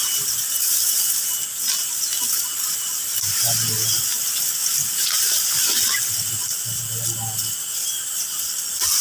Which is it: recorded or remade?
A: recorded